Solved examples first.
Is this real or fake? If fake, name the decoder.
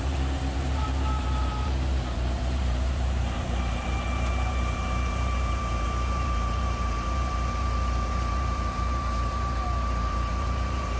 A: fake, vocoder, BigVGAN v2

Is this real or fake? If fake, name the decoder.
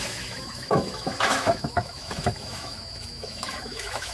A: fake, autoencoder, DAC-VAE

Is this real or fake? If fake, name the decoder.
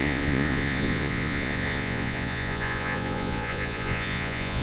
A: fake, vocoder, Vocos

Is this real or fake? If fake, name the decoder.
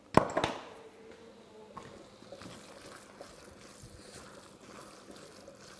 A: real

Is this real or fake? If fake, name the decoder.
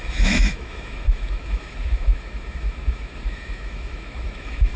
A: fake, autoencoder, DAC-VAE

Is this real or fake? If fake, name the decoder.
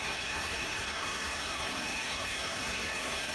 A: fake, codec, SNAC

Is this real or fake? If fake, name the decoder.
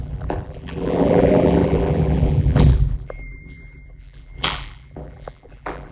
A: fake, vocoder, BigVGAN v2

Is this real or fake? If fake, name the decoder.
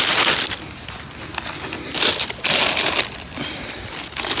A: real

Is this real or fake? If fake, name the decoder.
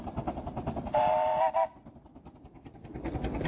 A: real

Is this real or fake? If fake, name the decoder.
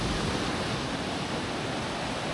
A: real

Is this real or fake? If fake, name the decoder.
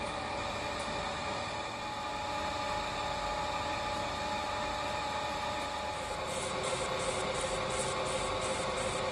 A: real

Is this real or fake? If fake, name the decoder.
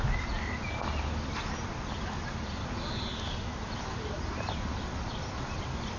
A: real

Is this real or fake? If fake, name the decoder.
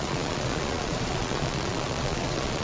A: fake, vocoder, Vocos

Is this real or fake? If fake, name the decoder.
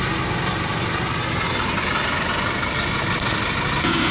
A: real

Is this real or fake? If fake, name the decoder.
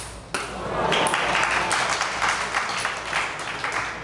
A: real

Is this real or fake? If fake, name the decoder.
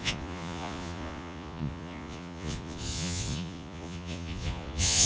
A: fake, vocoder, Vocos